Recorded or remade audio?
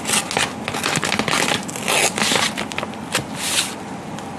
recorded